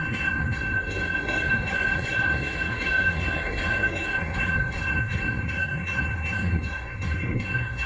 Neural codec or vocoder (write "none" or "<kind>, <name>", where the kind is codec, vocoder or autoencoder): codec, SNAC